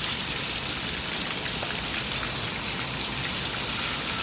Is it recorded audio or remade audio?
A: recorded